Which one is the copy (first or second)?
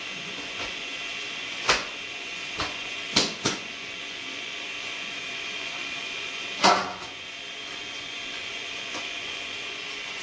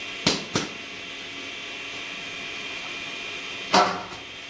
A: first